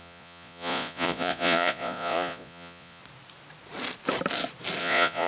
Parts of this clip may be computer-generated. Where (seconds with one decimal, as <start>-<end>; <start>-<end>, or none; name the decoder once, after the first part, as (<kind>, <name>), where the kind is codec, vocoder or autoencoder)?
0.0-3.0 (vocoder, Vocos); 4.8-5.3